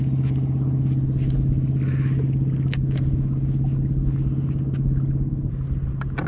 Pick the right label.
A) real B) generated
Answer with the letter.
A